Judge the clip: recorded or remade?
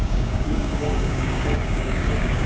remade